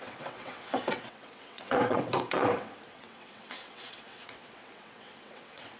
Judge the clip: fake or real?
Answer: fake